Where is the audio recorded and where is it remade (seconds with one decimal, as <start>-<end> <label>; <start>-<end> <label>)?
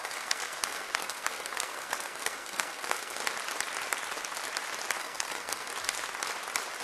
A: 0.0-3.2 remade; 3.2-5.0 recorded; 5.0-5.7 remade; 5.7-6.8 recorded